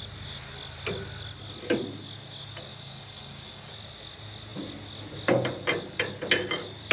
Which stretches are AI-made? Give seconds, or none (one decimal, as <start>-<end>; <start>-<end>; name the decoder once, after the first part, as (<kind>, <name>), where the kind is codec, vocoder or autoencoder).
2.7-3.7 (codec, DAC)